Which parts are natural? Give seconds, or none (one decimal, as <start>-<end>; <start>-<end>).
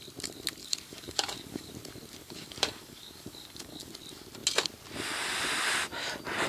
0.0-0.6; 1.7-2.2; 3.9-6.5